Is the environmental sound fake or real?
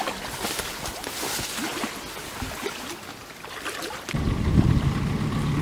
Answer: real